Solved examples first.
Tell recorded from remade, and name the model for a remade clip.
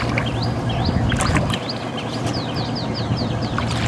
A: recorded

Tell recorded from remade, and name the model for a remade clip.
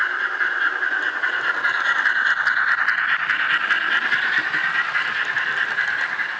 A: recorded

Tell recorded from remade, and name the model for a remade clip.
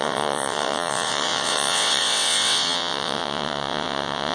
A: remade, vocoder, WaveNeXt